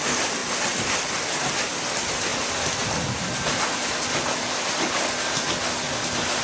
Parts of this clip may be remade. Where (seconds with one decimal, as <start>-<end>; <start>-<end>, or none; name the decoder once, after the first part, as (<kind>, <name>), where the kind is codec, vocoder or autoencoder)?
0.4-1.7 (vocoder, BigVGAN v2)